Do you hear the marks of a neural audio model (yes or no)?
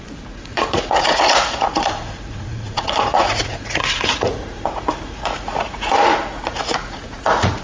yes